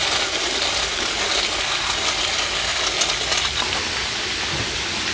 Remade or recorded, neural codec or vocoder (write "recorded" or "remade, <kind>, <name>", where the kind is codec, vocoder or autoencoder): recorded